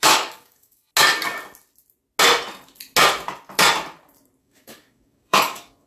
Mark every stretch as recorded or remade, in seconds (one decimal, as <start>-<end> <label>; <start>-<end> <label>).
0.0-0.9 remade; 0.9-4.4 recorded; 4.4-5.9 remade